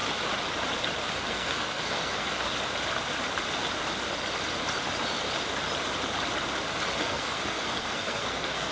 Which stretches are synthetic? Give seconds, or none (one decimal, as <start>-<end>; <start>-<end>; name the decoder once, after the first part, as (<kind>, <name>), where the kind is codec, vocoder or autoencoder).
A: 1.1-2.5 (codec, SNAC); 7.0-8.7